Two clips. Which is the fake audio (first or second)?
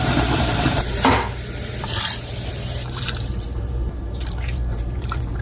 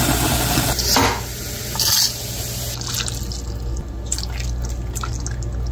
first